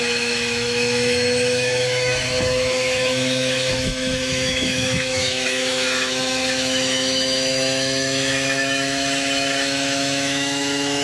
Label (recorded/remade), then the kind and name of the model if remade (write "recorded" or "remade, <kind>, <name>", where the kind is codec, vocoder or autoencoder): remade, autoencoder, DAC-VAE